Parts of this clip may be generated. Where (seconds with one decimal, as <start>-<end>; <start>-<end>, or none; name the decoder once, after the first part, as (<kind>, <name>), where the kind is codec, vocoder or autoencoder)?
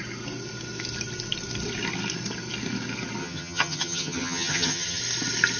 3.2-5.0 (vocoder, HiFi-GAN)